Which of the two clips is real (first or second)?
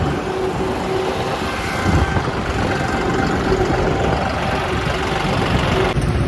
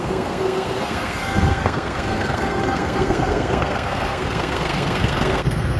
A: first